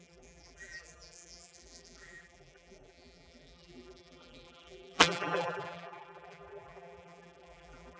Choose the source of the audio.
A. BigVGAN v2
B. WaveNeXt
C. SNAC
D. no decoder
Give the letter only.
A